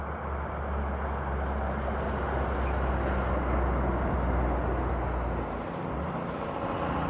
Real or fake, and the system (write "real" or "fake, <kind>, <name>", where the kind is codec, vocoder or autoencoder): real